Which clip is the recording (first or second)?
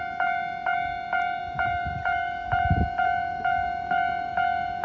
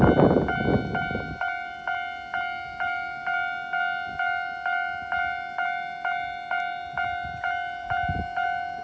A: second